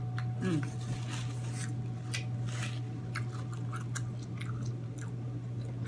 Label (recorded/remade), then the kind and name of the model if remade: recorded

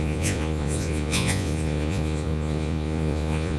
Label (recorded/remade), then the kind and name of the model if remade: remade, vocoder, Vocos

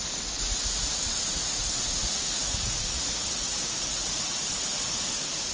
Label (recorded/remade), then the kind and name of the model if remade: remade, vocoder, Vocos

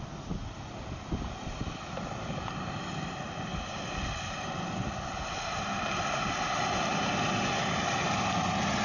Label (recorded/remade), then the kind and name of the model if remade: recorded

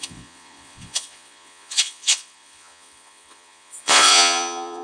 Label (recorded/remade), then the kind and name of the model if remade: remade, vocoder, Vocos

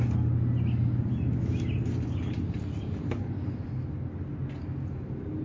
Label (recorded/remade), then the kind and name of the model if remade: recorded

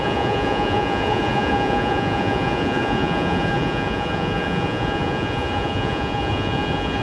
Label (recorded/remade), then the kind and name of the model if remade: remade, vocoder, Vocos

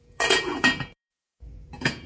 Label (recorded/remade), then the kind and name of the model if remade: remade, vocoder, Vocos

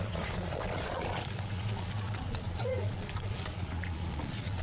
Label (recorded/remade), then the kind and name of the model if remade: remade, vocoder, Vocos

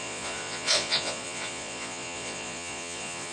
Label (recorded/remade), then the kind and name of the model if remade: remade, vocoder, Vocos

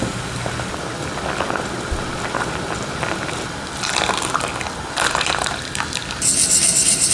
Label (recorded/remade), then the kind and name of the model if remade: recorded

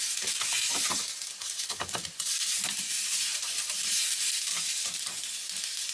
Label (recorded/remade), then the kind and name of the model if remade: recorded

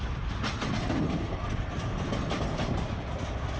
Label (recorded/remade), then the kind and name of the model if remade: recorded